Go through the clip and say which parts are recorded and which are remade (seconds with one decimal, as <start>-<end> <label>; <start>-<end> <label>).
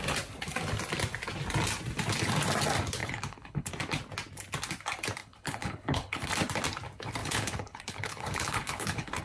0.0-3.0 recorded; 3.0-3.7 remade; 3.7-5.2 recorded; 5.2-6.3 remade; 6.3-7.2 recorded; 7.2-9.2 remade